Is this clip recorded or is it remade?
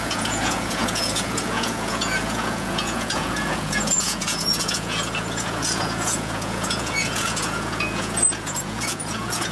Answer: remade